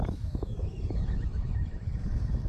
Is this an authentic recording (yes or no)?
no